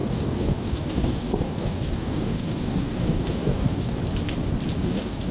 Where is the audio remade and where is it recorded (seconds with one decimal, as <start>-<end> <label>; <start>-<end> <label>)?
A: 0.0-4.0 remade; 4.0-4.8 recorded; 4.8-5.3 remade